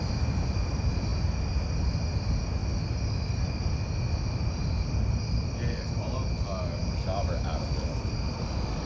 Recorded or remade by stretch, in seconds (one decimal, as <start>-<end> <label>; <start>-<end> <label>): 0.0-8.9 recorded